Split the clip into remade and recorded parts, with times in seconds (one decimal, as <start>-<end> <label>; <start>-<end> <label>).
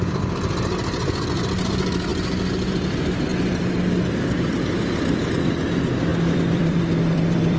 0.0-3.3 remade; 3.3-4.5 recorded; 4.5-7.6 remade